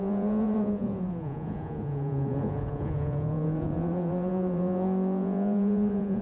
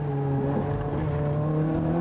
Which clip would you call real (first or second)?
second